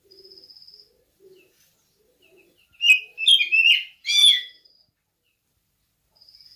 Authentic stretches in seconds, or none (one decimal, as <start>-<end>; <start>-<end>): 0.0-4.0; 4.7-6.6